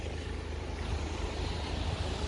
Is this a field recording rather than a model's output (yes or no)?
yes